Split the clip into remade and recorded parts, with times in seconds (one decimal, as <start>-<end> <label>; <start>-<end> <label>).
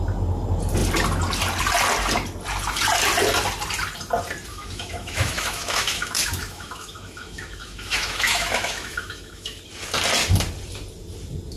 0.0-4.5 recorded; 4.5-9.6 remade; 9.6-11.6 recorded